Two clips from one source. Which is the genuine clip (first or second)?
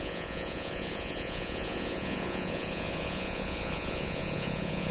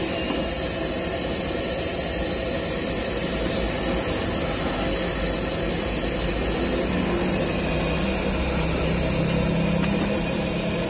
second